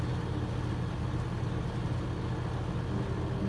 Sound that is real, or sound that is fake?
real